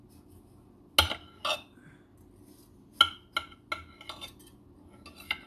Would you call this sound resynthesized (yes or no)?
no